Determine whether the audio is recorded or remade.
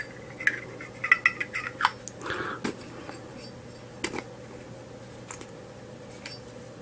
recorded